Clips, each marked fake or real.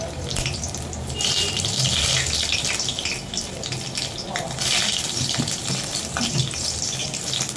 real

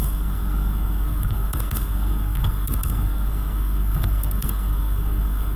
fake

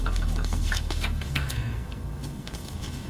fake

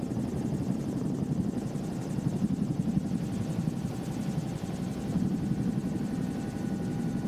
real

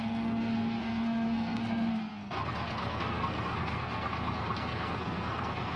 fake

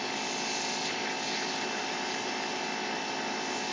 real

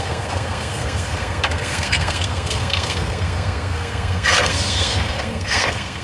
fake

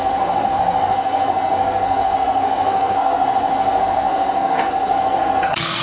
fake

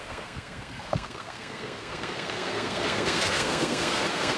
fake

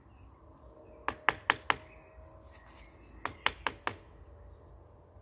real